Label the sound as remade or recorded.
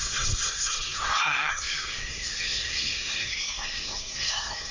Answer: remade